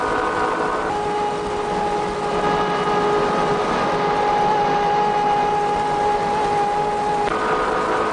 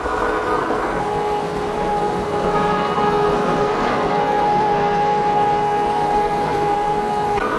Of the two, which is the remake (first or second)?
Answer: second